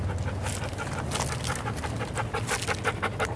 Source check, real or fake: real